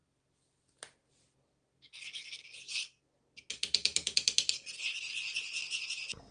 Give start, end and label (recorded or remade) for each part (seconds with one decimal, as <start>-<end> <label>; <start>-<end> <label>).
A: 0.0-6.3 recorded